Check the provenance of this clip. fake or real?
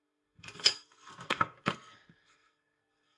fake